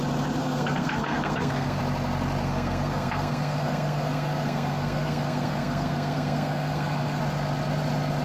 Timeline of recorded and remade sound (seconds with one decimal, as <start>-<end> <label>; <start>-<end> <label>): 0.0-0.4 recorded; 0.4-1.8 remade; 1.8-2.4 recorded; 2.4-7.2 remade; 7.2-8.2 recorded